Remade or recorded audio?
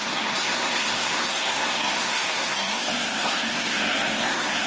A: remade